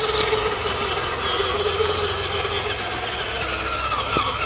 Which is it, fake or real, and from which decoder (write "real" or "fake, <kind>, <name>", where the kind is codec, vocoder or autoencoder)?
real